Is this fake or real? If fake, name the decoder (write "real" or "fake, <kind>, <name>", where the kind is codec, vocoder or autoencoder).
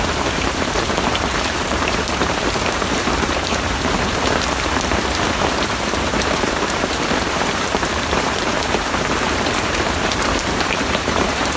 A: fake, vocoder, BigVGAN v2